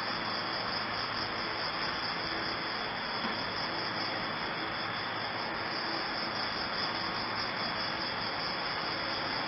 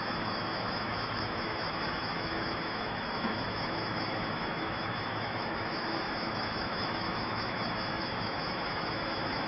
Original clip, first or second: first